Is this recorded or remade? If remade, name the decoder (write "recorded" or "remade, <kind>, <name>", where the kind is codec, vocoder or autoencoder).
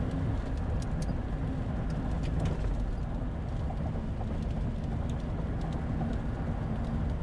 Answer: recorded